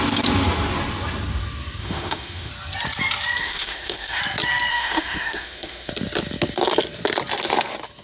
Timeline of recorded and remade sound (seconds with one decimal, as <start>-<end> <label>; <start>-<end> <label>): 0.0-1.8 recorded; 1.8-2.5 remade; 2.5-3.4 recorded; 3.4-4.2 remade; 4.2-4.7 recorded; 4.7-5.9 remade; 5.9-8.0 recorded